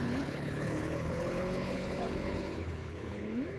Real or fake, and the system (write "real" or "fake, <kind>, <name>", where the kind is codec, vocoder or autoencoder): fake, codec, HILCodec